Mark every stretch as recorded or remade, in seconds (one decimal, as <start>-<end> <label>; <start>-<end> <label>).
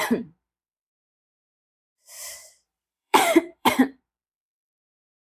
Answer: 0.0-0.9 recorded; 0.9-4.0 remade; 4.0-5.2 recorded